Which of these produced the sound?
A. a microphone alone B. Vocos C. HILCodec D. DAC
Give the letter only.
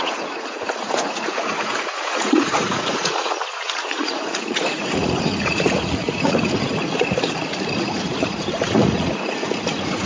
B